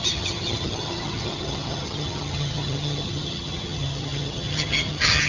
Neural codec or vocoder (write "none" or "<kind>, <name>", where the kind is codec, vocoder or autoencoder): vocoder, HiFi-GAN